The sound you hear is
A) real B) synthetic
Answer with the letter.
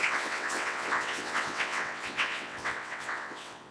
B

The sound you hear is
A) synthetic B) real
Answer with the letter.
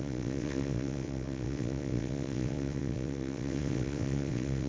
A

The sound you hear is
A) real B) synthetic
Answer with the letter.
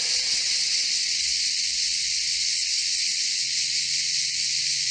B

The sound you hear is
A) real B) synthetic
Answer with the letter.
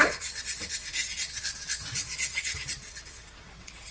B